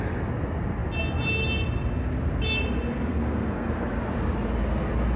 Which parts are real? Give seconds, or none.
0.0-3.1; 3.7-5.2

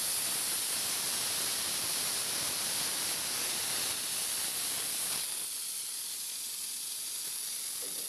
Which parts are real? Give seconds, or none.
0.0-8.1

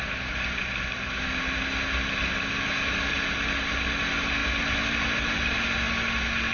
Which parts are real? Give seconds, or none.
0.0-6.5

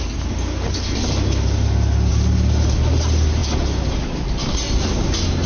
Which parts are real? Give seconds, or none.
0.0-2.1; 2.8-5.5

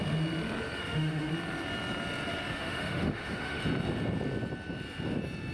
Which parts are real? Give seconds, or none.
0.0-0.8; 1.3-2.5; 3.6-5.5

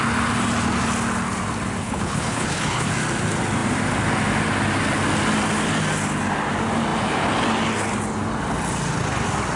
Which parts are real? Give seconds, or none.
0.0-1.8; 2.9-9.6